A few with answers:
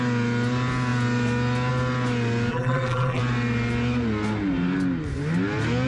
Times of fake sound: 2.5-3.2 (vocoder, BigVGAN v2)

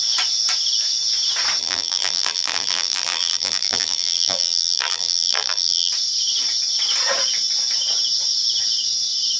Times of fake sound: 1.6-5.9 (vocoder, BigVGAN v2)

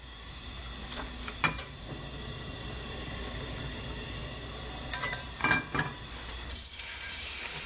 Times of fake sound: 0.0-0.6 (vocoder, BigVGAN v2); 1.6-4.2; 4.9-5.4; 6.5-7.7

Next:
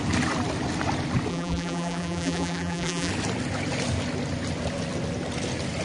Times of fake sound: 1.3-3.1 (vocoder, BigVGAN v2)

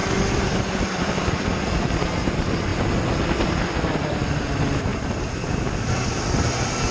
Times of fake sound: 0.0-2.7 (vocoder, BigVGAN v2); 3.4-4.9; 5.8-6.9

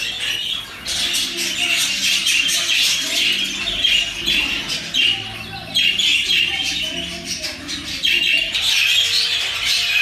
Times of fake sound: none